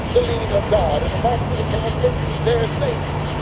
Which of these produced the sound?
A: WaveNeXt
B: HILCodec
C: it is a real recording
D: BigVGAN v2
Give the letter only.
C